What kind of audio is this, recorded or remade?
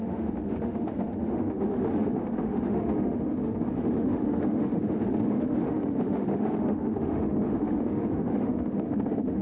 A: remade